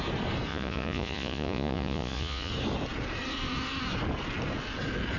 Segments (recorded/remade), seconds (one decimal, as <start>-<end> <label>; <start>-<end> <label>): 0.0-0.5 recorded; 0.5-2.5 remade; 2.5-5.2 recorded